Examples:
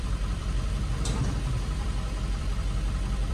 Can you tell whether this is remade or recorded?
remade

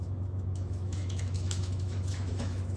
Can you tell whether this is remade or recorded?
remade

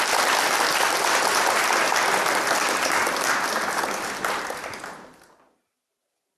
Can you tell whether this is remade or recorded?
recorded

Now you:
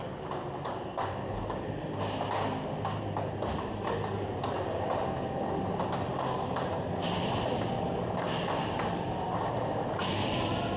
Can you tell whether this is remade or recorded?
recorded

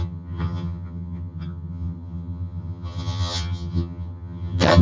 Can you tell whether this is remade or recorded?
remade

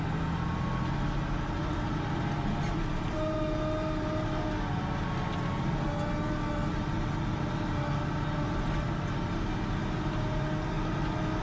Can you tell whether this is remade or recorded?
recorded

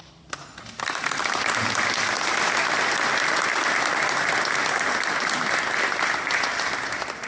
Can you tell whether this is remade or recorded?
recorded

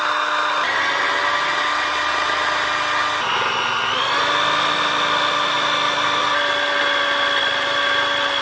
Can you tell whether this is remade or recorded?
recorded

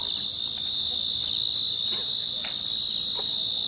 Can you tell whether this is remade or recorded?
recorded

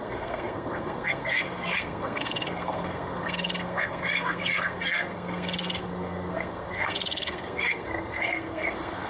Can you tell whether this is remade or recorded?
remade